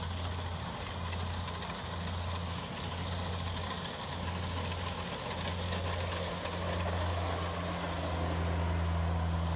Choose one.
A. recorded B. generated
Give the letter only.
A